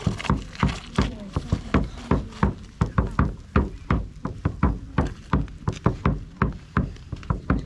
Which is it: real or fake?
fake